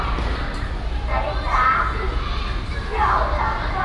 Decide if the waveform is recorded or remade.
recorded